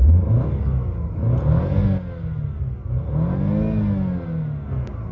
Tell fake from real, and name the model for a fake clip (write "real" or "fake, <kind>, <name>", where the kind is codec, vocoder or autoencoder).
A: real